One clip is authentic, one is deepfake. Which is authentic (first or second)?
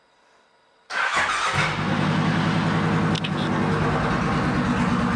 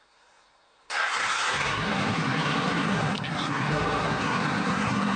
first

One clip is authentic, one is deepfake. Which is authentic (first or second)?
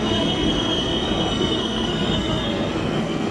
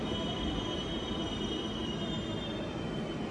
second